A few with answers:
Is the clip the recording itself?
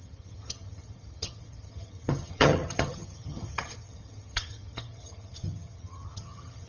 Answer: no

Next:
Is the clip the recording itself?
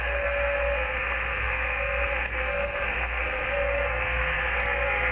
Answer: no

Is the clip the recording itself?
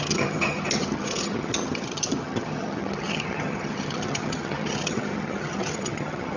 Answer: no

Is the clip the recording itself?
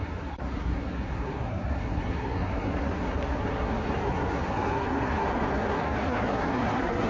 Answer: no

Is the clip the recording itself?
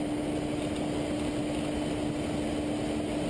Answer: yes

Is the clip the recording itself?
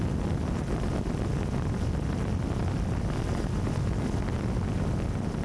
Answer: yes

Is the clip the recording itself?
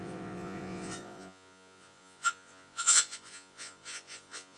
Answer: no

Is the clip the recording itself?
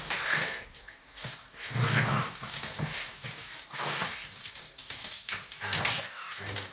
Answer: no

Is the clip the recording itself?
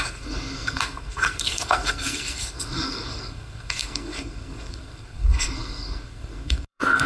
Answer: no